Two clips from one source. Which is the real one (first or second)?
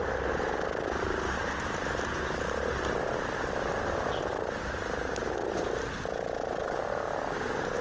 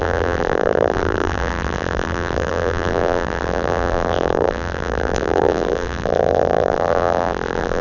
first